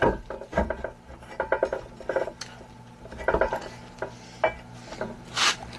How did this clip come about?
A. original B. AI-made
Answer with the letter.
A